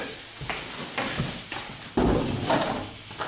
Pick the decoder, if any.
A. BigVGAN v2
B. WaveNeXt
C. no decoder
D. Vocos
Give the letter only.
C